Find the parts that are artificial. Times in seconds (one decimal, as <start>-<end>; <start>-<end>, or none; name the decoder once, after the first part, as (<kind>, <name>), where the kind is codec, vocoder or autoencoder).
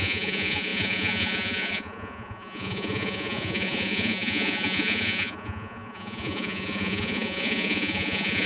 0.0-8.5 (vocoder, Vocos)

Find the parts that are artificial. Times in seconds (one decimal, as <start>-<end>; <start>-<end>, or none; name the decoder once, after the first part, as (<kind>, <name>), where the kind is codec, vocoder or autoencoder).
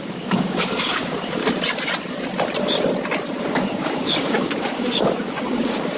0.0-1.4 (codec, DAC); 3.5-6.0